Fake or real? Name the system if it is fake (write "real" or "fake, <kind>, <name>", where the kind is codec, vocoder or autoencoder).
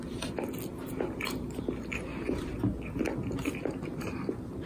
real